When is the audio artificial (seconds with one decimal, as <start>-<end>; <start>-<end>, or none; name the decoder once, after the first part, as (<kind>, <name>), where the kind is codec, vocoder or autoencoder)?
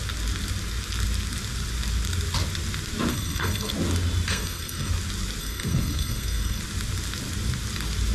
3.1-3.7 (codec, SNAC); 4.3-4.9; 5.4-6.6